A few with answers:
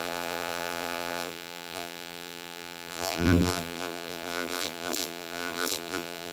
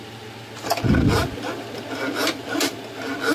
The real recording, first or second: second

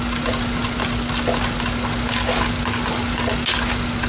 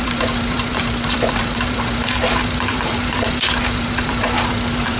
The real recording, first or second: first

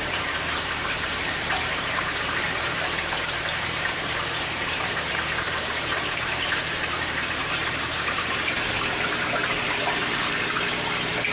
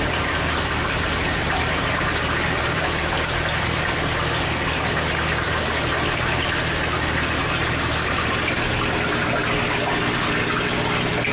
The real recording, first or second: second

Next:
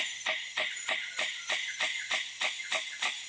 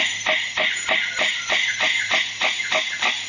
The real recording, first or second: second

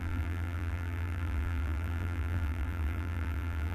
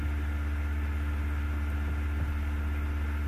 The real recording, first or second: second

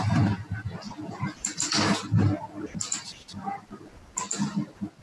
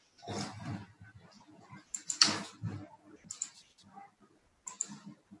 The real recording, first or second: second